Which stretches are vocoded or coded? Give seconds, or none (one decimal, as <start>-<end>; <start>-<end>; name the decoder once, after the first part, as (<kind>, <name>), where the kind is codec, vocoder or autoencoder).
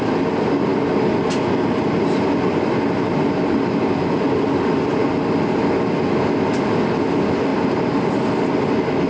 none